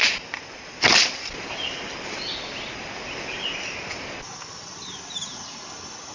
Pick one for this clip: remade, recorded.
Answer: recorded